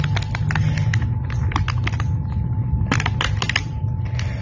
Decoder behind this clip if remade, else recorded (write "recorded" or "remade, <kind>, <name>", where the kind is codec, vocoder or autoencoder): recorded